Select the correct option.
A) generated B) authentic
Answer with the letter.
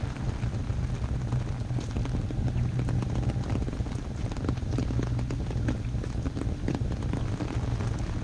B